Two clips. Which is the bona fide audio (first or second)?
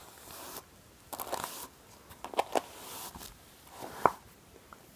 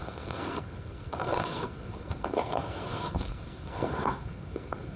first